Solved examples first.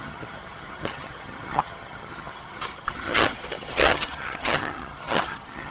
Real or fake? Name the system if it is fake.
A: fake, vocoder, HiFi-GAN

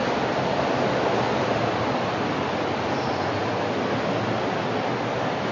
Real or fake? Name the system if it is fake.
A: real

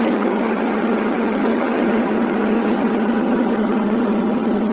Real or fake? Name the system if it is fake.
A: fake, vocoder, HiFi-GAN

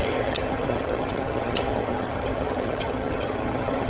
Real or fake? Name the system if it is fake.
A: fake, vocoder, HiFi-GAN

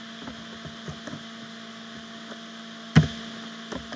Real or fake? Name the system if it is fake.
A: real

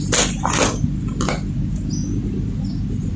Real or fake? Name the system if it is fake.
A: real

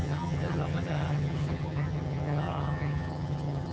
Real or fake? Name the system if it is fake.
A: fake, vocoder, HiFi-GAN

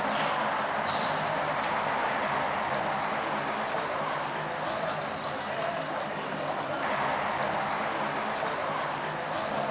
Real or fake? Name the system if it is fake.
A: real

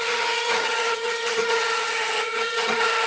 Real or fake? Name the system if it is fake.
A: fake, vocoder, HiFi-GAN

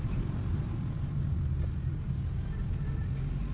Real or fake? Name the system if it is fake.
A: real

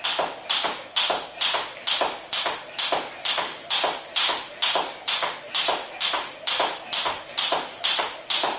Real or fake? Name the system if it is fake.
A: real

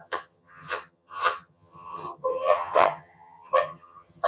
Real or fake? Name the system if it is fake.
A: fake, vocoder, HiFi-GAN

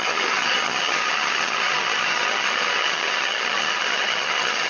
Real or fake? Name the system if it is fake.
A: fake, vocoder, HiFi-GAN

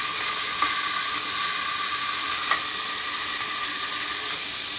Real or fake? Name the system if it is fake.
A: real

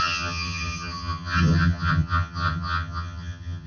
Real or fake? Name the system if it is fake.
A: fake, vocoder, HiFi-GAN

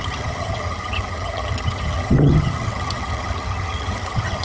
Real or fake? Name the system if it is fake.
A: fake, vocoder, HiFi-GAN